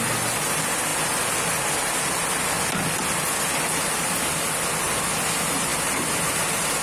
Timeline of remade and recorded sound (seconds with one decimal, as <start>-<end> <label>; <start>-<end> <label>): 0.0-6.8 recorded